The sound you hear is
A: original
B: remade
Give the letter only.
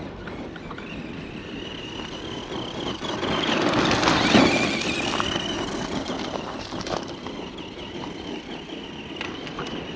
A